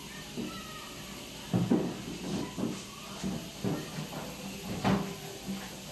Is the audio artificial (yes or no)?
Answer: no